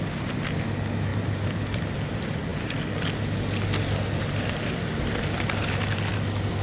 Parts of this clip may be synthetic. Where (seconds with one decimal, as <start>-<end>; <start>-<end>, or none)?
1.1-1.8